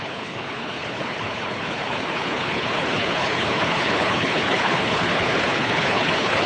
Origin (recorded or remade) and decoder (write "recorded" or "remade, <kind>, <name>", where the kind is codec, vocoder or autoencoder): remade, codec, HILCodec